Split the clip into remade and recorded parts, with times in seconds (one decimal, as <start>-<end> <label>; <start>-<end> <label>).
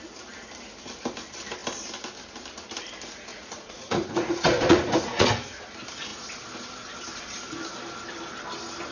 0.0-3.3 recorded; 3.3-5.3 remade; 5.3-8.9 recorded